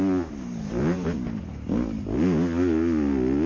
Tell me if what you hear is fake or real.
real